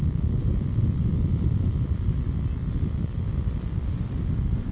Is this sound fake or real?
real